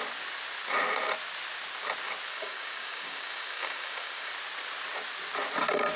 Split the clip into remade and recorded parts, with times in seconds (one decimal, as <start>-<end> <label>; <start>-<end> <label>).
0.0-2.3 recorded; 2.3-4.3 remade; 4.3-6.0 recorded